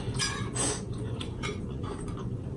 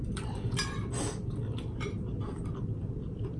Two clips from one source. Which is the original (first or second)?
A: second